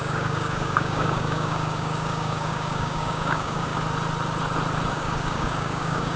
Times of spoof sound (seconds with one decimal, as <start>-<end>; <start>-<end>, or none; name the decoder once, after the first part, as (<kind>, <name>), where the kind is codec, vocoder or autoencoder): 0.0-3.7 (codec, DAC); 4.9-6.2

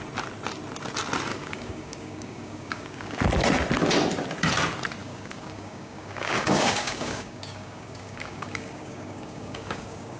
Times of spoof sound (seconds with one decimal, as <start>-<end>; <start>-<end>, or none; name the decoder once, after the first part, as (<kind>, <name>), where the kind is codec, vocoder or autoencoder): 1.3-3.2 (codec, DAC); 5.0-10.2

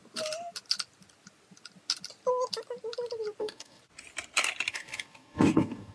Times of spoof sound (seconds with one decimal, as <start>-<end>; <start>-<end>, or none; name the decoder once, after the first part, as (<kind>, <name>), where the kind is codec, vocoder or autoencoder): 3.4-3.8 (codec, DAC); 4.7-5.9

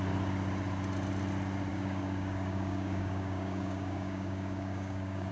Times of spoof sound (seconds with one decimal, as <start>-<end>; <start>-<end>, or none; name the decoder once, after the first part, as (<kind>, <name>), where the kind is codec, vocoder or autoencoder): 1.7-5.3 (codec, DAC)

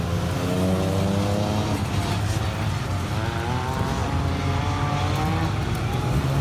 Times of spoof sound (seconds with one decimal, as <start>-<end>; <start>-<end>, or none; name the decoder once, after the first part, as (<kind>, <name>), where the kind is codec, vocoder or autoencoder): none